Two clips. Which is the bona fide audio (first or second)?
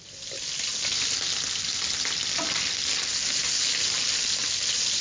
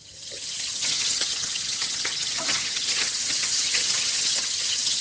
first